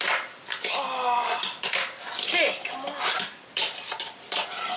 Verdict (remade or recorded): recorded